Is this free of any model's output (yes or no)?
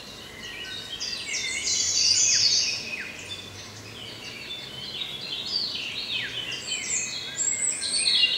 yes